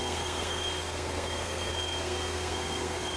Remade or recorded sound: remade